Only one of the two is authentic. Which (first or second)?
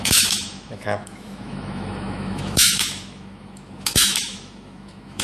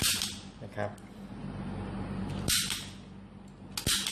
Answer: second